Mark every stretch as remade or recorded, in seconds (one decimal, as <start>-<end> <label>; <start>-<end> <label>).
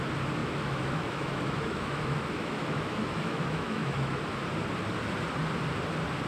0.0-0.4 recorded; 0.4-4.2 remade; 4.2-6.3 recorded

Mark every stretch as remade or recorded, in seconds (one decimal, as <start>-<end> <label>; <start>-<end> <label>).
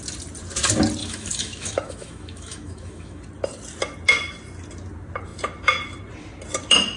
0.0-1.0 recorded; 1.0-3.2 remade; 3.2-7.0 recorded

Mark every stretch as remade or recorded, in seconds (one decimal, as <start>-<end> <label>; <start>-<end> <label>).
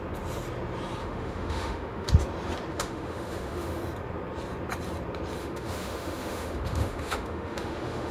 0.0-1.0 recorded; 1.0-2.1 remade; 2.1-2.7 recorded; 2.7-3.8 remade; 3.8-5.4 recorded; 5.4-8.1 remade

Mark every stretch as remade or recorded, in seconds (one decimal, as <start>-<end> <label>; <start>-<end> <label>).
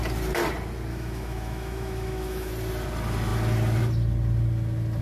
0.0-0.9 recorded; 0.9-2.5 remade; 2.5-5.0 recorded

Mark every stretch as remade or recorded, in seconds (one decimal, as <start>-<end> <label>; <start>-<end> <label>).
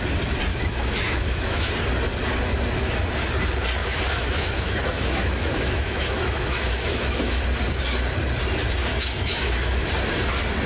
0.0-0.5 recorded; 0.5-1.7 remade; 1.7-3.8 recorded; 3.8-7.4 remade; 7.4-8.9 recorded; 8.9-9.9 remade; 9.9-10.7 recorded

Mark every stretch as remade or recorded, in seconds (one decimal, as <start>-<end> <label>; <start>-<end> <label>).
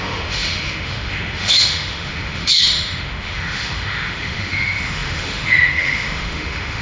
0.0-6.8 remade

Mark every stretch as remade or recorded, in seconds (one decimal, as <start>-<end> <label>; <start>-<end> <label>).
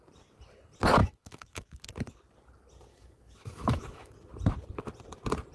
0.0-1.0 recorded; 1.0-1.8 remade; 1.8-2.9 recorded; 2.9-4.1 remade; 4.1-5.5 recorded